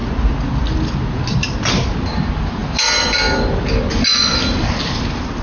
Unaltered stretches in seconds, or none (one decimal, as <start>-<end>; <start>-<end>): 0.0-5.4